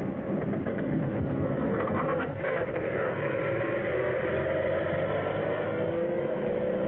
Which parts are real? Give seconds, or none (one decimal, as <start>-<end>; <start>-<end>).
0.0-0.7; 3.4-5.4; 6.5-6.9